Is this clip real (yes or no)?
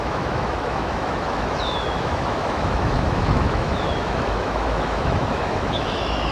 no